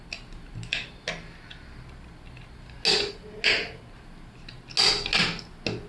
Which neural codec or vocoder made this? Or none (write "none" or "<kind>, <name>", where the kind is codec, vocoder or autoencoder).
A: none